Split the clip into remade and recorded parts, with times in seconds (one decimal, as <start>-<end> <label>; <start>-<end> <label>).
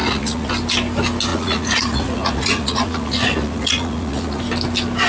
0.0-0.5 remade; 0.5-1.3 recorded; 1.3-4.4 remade; 4.4-5.1 recorded